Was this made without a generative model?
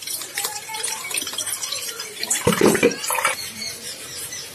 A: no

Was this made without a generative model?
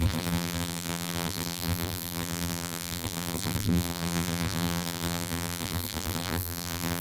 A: no